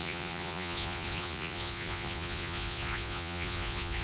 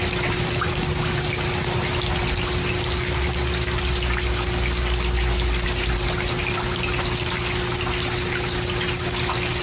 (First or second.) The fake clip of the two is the first